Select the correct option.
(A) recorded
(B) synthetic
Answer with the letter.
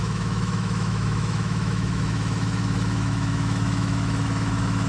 B